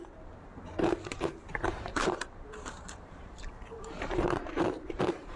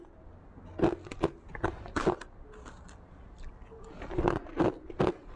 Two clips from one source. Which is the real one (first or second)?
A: second